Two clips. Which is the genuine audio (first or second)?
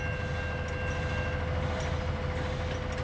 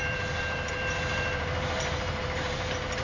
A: first